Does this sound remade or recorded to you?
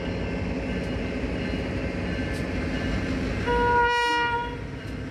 recorded